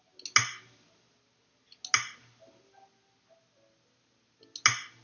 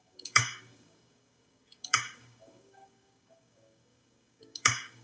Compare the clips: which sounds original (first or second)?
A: first